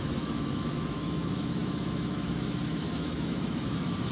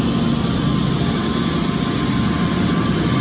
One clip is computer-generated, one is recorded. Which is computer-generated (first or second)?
first